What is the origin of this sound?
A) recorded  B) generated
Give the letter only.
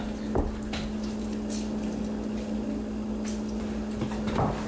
A